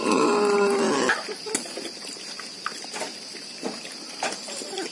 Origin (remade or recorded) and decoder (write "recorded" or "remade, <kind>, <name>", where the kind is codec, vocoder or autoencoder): recorded